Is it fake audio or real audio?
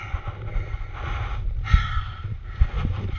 real